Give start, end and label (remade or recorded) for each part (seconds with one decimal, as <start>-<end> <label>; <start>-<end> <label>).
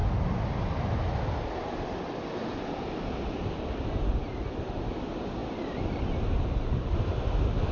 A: 0.0-7.7 recorded